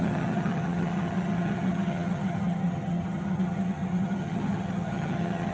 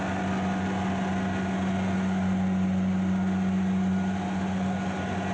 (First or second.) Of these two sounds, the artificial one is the first